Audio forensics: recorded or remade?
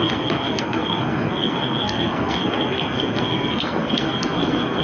remade